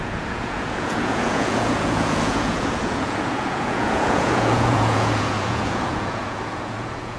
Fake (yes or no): yes